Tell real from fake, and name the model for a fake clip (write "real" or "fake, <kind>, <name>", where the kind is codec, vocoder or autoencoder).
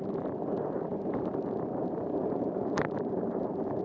fake, vocoder, BigVGAN v2